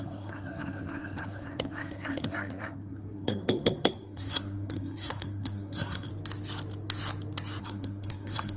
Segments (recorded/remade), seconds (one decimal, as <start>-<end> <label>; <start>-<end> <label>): 0.0-6.1 remade; 6.1-7.6 recorded; 7.6-8.6 remade